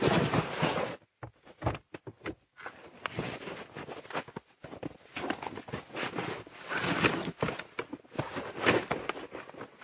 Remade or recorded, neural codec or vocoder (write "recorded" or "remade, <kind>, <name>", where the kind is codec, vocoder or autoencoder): recorded